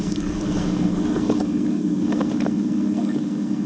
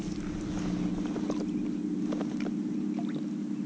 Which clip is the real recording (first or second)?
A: second